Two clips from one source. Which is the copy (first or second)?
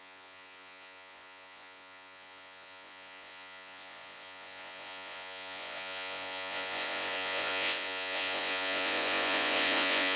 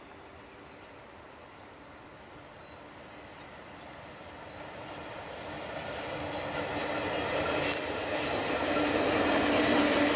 first